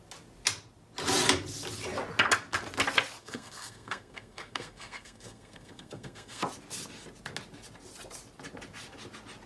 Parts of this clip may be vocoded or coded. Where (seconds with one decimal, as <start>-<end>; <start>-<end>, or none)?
3.2-6.4